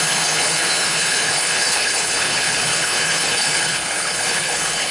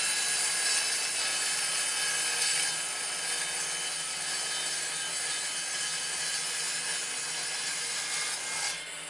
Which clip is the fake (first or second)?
first